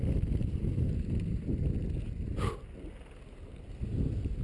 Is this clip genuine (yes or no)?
yes